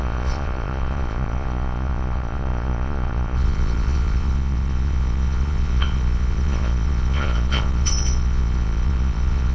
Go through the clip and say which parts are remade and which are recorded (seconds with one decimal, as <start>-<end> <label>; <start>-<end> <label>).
0.0-9.5 remade